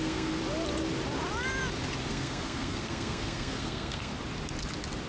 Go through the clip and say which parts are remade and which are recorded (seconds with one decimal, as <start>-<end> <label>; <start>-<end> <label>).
0.0-0.4 remade; 0.4-2.1 recorded; 2.1-4.1 remade; 4.1-5.1 recorded